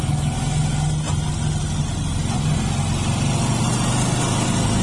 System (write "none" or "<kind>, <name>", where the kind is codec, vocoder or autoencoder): none